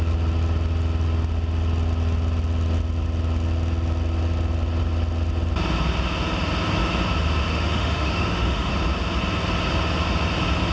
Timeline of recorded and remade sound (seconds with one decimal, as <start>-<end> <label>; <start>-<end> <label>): 0.0-7.5 recorded; 7.5-8.7 remade; 8.7-10.7 recorded